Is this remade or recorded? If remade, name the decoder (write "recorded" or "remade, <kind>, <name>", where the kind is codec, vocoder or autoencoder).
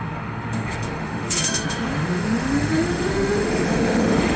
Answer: remade, autoencoder, DAC-VAE